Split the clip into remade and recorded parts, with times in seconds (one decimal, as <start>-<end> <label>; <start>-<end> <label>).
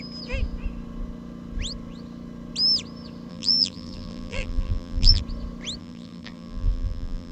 0.0-3.3 recorded; 3.3-5.2 remade; 5.2-5.8 recorded; 5.8-7.3 remade